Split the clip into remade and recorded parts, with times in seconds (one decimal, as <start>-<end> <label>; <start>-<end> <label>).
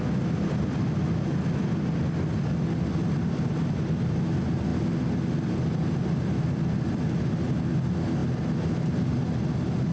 0.0-9.9 recorded